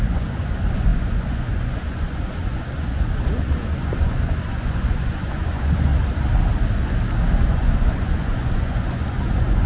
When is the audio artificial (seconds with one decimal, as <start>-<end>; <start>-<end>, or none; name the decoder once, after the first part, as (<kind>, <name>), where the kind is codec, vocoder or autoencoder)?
0.0-5.9 (vocoder, Vocos); 7.3-9.7